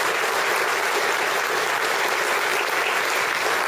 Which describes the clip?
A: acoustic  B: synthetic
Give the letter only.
A